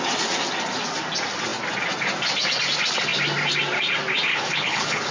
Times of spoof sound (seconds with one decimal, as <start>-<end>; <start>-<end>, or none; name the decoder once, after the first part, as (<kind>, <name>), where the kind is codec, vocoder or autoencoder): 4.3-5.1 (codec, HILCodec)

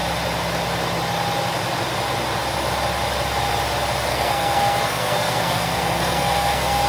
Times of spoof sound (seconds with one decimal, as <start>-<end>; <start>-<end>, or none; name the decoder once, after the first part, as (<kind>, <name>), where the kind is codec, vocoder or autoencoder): 4.1-6.9 (codec, SNAC)

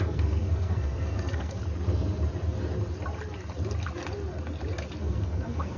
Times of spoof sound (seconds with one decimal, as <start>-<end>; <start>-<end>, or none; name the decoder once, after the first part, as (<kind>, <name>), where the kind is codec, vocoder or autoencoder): 0.0-1.6 (codec, SNAC); 5.0-5.8